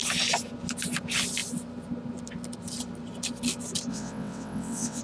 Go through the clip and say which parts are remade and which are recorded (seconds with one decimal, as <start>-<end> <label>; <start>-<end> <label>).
0.0-3.9 recorded; 3.9-5.0 remade